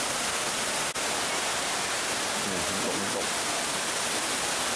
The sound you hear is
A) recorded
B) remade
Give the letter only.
A